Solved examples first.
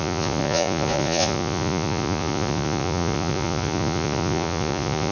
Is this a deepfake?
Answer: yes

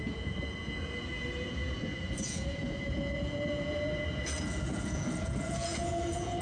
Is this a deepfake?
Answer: yes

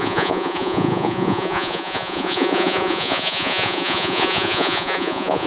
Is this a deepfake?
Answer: yes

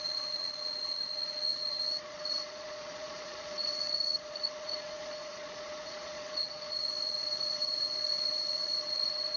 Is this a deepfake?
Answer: yes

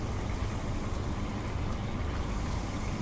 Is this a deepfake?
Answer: no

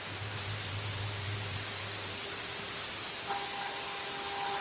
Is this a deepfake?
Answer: no